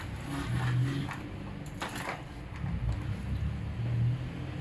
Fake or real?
real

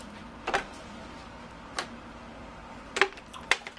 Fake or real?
real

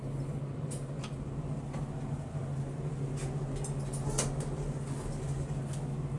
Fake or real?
real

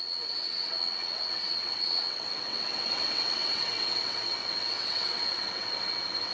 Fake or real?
fake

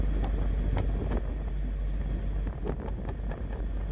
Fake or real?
real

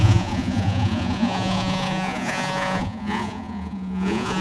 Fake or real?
fake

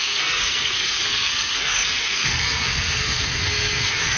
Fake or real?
fake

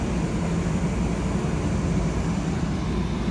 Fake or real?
real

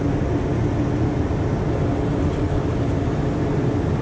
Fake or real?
real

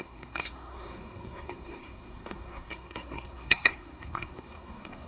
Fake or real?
fake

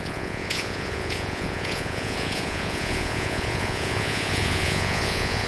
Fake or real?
fake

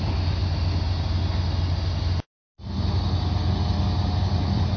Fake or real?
real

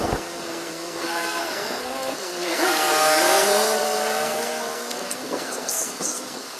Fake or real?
fake